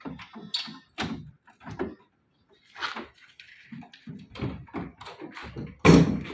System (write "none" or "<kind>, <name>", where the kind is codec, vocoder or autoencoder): none